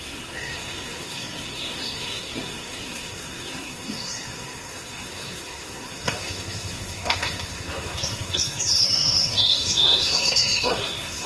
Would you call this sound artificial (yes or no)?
yes